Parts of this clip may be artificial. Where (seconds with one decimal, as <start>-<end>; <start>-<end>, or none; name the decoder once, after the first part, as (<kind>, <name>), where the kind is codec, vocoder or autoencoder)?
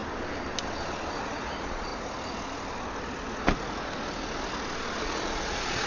1.1-1.9 (vocoder, Vocos); 5.0-5.9